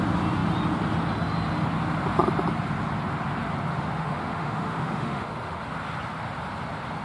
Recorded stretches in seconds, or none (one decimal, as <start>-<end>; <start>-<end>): 0.0-3.7; 5.6-7.0